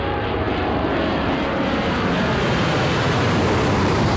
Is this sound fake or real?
fake